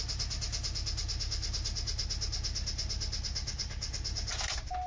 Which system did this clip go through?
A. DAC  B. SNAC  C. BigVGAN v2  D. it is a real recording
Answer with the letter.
D